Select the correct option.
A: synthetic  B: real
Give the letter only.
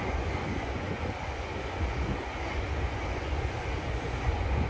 A